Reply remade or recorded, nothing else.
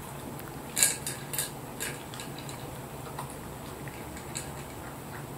recorded